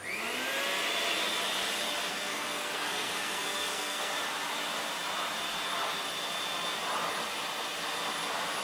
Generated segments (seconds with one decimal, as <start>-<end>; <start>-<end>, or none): 2.1-4.1